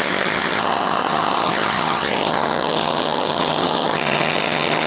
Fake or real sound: fake